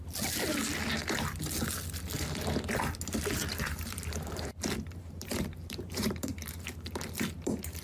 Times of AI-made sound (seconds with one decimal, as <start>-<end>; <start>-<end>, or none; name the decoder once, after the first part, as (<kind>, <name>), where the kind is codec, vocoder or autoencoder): 3.5-4.6 (vocoder, BigVGAN v2); 5.0-7.0